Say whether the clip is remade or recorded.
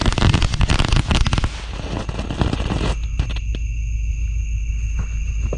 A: recorded